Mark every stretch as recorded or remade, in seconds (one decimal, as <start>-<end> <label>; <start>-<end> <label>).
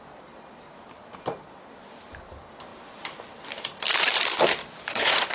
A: 0.0-4.6 recorded; 4.6-5.3 remade